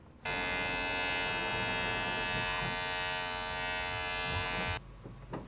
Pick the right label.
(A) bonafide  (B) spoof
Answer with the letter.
A